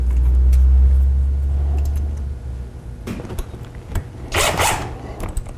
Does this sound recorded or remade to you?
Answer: recorded